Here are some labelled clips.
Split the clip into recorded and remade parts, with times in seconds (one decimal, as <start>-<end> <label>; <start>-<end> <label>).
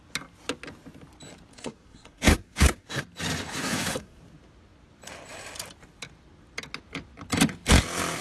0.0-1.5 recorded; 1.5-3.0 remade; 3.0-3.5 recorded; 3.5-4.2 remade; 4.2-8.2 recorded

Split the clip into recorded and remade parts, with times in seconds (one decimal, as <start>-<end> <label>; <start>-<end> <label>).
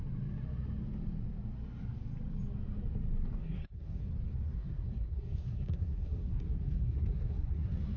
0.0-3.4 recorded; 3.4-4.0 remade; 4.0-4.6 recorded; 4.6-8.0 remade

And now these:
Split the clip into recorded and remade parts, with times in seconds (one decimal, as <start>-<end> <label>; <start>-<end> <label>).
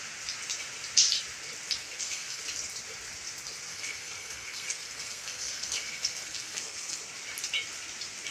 0.0-1.8 recorded; 1.8-2.4 remade; 2.4-3.7 recorded; 3.7-7.0 remade; 7.0-8.3 recorded